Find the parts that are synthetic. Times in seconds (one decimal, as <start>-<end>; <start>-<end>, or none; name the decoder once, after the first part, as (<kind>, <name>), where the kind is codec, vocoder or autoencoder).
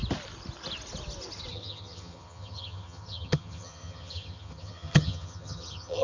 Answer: 1.5-6.0 (vocoder, HiFi-GAN)